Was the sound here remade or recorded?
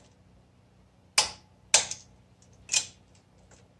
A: recorded